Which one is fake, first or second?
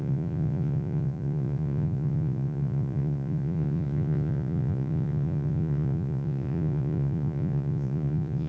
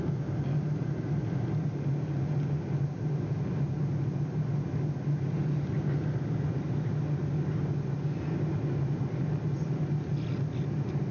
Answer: first